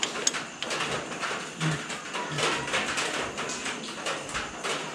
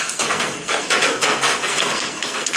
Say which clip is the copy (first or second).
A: second